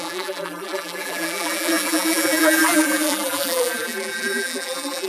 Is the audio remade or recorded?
remade